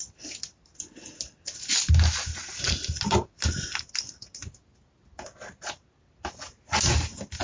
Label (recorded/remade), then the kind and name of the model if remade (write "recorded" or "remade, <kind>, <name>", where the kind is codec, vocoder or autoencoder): recorded